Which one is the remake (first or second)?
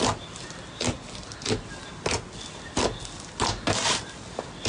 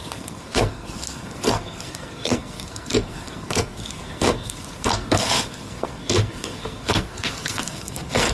second